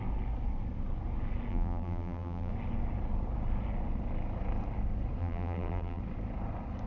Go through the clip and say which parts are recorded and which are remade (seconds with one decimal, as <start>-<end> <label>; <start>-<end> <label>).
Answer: 0.0-1.5 recorded; 1.5-2.5 remade; 2.5-5.2 recorded; 5.2-6.0 remade; 6.0-6.9 recorded